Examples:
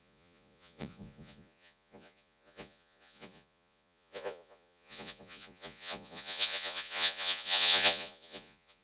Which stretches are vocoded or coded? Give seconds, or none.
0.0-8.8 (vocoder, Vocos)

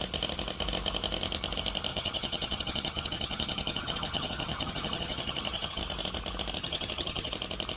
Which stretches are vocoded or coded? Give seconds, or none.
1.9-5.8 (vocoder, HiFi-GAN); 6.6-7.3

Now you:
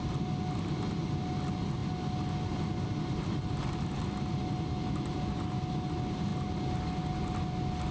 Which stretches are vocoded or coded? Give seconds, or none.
none

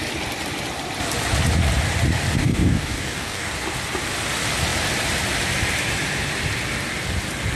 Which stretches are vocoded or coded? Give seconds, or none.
2.4-3.5 (codec, DAC)

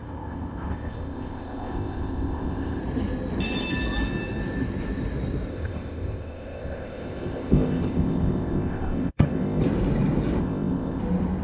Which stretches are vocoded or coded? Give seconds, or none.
0.0-2.8 (codec, ZipCodec); 5.5-9.6; 10.4-11.0

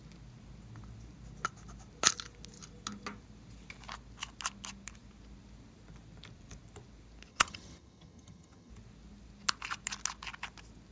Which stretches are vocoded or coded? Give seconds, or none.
7.3-8.7 (vocoder, HiFi-GAN)